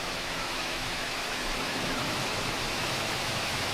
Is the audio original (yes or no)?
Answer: no